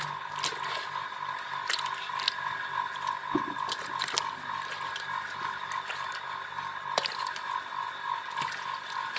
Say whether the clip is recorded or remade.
recorded